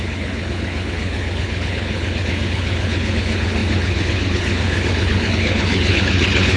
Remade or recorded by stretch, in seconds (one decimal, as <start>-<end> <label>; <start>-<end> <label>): 0.0-6.6 remade